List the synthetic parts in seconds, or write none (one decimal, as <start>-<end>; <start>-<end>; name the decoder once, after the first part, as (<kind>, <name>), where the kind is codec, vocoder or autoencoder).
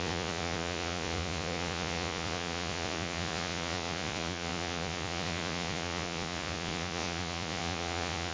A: 0.0-8.3 (vocoder, Vocos)